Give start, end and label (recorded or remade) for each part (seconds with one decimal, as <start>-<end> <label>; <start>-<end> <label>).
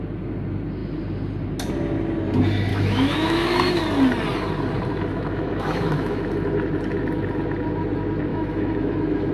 0.0-2.7 recorded; 2.7-3.8 remade; 3.8-5.1 recorded; 5.1-6.2 remade; 6.2-8.3 recorded; 8.3-9.3 remade